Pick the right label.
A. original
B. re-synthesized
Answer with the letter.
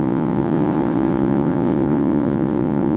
B